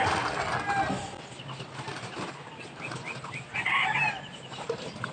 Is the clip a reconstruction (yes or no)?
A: no